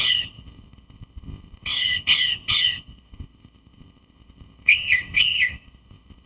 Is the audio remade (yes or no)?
yes